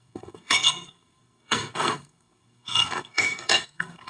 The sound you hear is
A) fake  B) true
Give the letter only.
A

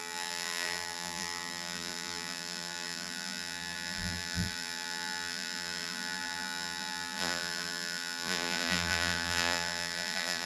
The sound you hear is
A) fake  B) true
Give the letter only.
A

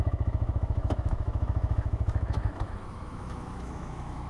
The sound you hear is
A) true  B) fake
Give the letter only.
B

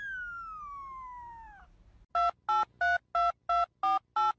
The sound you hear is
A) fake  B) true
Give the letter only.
B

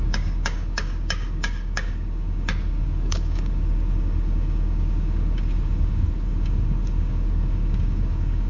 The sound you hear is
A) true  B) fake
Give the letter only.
B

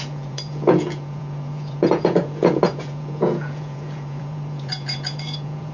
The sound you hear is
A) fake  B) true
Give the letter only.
A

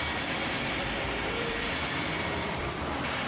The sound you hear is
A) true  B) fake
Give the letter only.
B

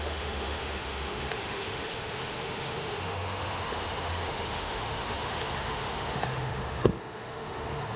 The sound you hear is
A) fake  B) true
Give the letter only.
A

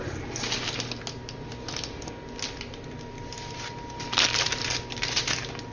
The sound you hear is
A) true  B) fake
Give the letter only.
A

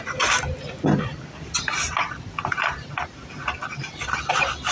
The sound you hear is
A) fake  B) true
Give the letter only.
B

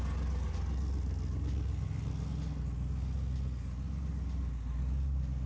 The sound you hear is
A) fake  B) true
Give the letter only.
B